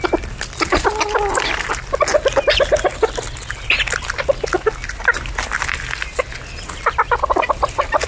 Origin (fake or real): real